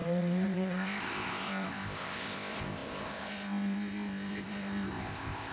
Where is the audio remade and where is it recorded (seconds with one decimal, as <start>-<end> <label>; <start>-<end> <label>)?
0.0-5.5 remade